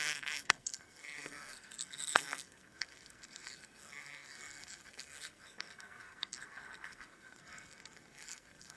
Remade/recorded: remade